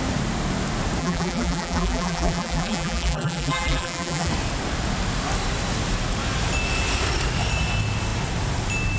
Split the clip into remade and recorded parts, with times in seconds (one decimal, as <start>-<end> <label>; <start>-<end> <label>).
0.0-1.0 recorded; 1.0-4.3 remade; 4.3-9.0 recorded